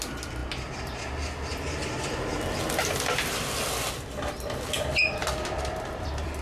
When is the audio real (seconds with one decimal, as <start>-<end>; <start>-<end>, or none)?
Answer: 0.0-5.2